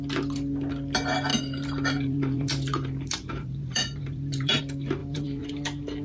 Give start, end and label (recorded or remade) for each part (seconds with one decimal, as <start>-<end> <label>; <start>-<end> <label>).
0.0-1.3 recorded; 1.3-4.6 remade; 4.6-5.0 recorded; 5.0-5.5 remade; 5.5-6.0 recorded